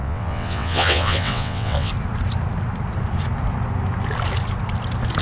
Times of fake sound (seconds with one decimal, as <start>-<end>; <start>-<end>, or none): 0.0-1.9